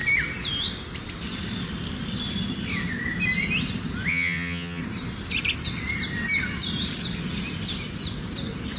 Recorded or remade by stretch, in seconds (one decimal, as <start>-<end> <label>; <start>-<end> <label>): 0.0-4.1 recorded; 4.1-4.8 remade; 4.8-8.8 recorded